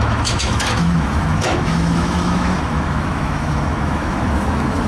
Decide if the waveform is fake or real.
fake